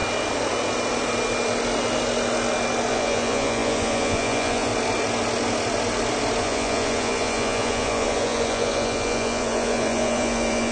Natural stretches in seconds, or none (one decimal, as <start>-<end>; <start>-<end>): 0.0-2.9; 4.7-6.4